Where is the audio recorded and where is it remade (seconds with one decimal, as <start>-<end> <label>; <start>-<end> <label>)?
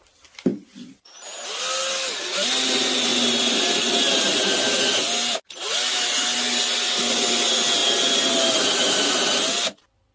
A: 0.0-10.1 recorded